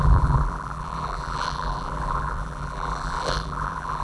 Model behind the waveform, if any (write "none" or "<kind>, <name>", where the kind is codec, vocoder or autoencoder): vocoder, BigVGAN v2